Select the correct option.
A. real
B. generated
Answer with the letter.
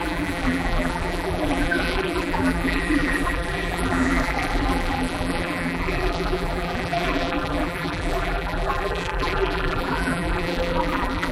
B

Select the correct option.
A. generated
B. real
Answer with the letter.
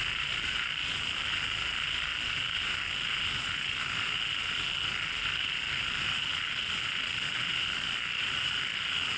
B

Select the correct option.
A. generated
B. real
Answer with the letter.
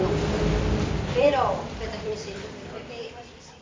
A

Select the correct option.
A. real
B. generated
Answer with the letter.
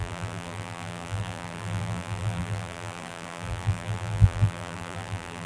B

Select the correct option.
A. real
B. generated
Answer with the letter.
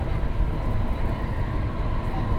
A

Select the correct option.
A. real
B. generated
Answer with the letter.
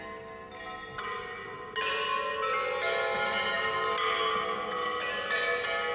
A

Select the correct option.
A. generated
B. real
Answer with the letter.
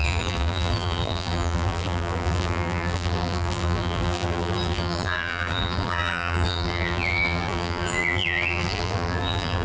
A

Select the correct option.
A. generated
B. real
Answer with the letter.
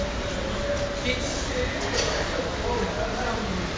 B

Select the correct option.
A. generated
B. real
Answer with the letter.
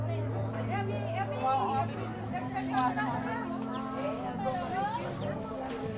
B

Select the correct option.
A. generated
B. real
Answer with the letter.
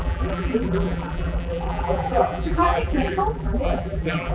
A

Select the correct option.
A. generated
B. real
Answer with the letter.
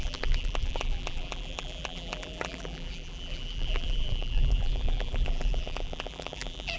A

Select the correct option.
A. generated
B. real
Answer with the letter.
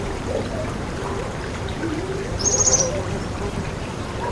A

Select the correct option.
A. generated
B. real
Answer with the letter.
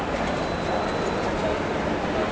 A